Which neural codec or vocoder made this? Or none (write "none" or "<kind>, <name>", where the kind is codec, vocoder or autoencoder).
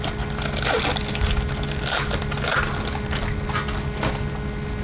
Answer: none